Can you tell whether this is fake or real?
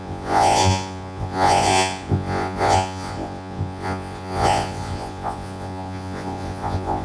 fake